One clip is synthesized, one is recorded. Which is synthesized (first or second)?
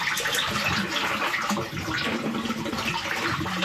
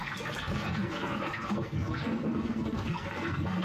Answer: second